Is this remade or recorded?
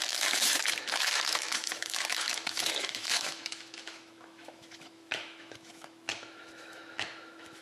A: remade